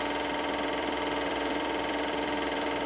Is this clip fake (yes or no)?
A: yes